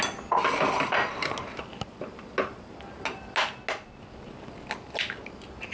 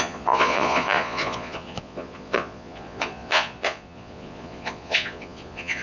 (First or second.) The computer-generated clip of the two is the second